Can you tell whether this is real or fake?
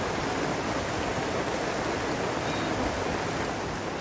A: real